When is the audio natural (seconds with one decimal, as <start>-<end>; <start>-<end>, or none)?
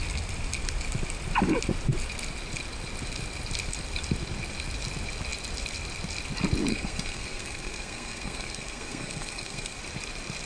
0.0-6.7; 9.8-10.5